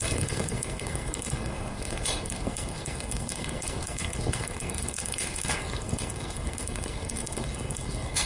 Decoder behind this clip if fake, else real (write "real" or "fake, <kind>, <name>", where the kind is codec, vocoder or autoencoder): fake, codec, SNAC